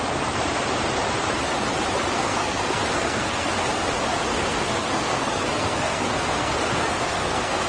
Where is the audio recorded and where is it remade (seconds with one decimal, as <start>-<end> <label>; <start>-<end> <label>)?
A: 0.0-2.1 recorded; 2.1-3.5 remade; 3.5-4.3 recorded; 4.3-7.7 remade